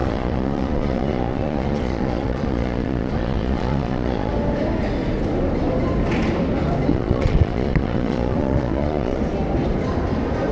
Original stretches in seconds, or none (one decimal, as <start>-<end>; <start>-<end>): 4.3-6.9; 9.2-10.5